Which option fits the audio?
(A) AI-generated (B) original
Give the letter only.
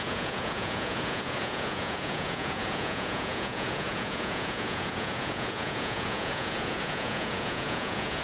A